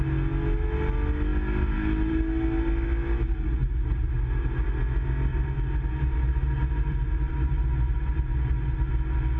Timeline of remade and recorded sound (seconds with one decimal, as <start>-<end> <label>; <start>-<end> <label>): 0.0-5.3 recorded; 5.3-8.9 remade; 8.9-9.4 recorded